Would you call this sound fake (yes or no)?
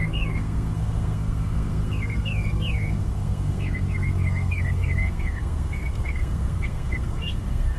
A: yes